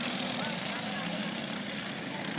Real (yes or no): yes